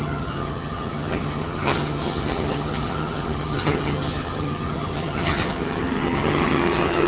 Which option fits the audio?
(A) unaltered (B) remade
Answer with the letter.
B